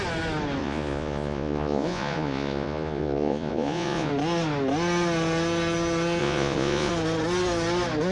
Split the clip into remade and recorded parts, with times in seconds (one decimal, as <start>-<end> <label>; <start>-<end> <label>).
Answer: 0.0-0.6 recorded; 0.6-4.1 remade; 4.1-6.2 recorded; 6.2-6.9 remade; 6.9-8.1 recorded